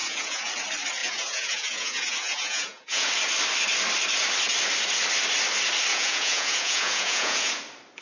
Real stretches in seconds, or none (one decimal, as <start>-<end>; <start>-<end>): 0.5-1.0; 3.1-5.9; 7.6-8.0